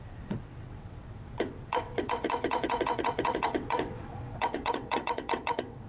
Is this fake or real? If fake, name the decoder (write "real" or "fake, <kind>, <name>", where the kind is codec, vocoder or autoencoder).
fake, vocoder, WaveNeXt